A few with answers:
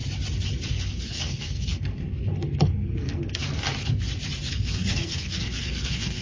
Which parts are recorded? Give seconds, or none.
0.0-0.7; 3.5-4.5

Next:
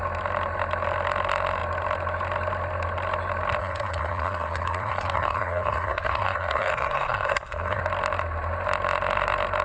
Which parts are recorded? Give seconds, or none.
0.0-3.6; 7.8-9.6

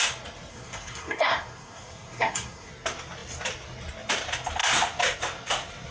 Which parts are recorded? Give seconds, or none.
0.0-0.5; 2.7-5.9

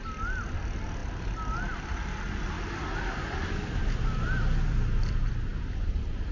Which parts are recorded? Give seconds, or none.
0.0-6.3

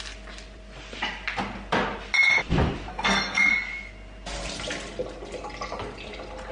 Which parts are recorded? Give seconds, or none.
0.0-2.9; 3.5-6.5